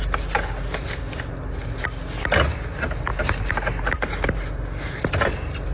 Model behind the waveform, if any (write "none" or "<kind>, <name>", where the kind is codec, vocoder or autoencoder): none